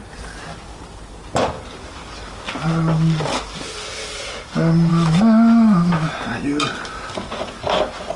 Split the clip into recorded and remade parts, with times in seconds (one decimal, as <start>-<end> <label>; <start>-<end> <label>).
0.0-4.9 recorded; 4.9-6.1 remade; 6.1-8.2 recorded